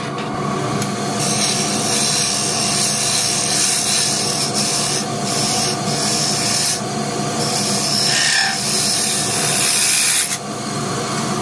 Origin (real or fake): real